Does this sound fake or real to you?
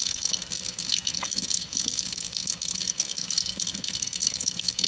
fake